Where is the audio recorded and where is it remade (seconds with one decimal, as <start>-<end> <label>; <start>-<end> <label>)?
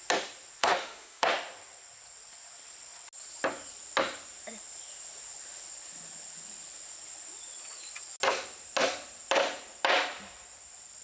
0.0-0.6 recorded; 0.6-1.3 remade; 1.3-11.0 recorded